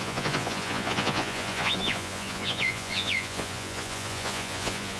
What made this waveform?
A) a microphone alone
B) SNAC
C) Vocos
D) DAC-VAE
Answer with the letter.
C